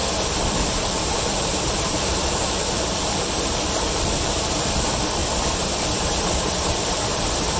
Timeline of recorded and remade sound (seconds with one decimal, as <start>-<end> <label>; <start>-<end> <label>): 0.0-0.7 recorded; 0.7-5.2 remade; 5.2-6.2 recorded; 6.2-7.6 remade

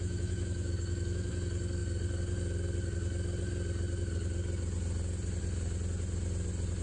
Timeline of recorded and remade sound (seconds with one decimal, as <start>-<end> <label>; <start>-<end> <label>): 0.0-1.3 remade; 1.3-6.8 recorded

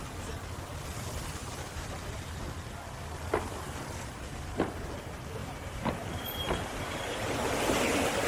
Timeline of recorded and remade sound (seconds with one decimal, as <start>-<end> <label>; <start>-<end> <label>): 0.0-1.4 recorded; 1.4-2.4 remade; 2.4-5.4 recorded; 5.4-7.0 remade; 7.0-8.3 recorded

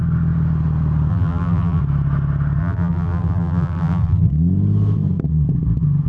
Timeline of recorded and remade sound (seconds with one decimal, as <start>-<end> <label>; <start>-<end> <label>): 0.0-1.1 recorded; 1.1-1.8 remade; 1.8-2.6 recorded; 2.6-4.3 remade; 4.3-6.1 recorded